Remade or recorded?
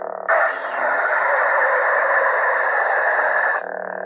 recorded